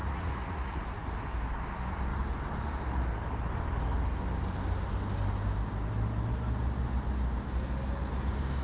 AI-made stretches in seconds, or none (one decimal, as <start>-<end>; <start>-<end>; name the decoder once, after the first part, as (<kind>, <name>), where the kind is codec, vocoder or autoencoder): 0.0-0.8 (vocoder, Vocos)